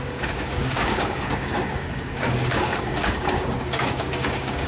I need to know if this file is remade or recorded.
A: remade